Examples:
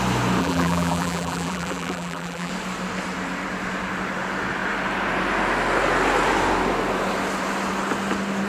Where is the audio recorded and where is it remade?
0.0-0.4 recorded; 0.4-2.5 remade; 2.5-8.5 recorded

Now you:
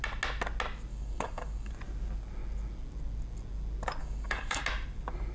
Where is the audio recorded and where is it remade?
0.0-0.9 recorded; 0.9-1.7 remade; 1.7-4.0 recorded; 4.0-4.6 remade; 4.6-5.3 recorded

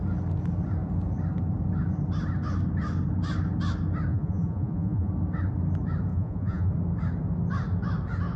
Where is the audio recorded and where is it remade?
0.0-4.1 recorded; 4.1-5.1 remade; 5.1-6.1 recorded; 6.1-6.7 remade; 6.7-8.4 recorded

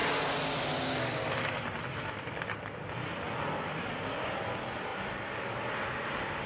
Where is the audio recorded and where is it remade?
0.0-6.5 recorded